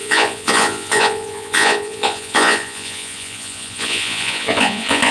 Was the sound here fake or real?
fake